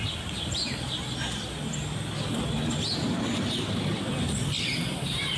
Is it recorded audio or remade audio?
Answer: recorded